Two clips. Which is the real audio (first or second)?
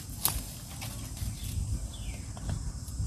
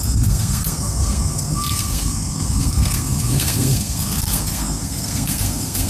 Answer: first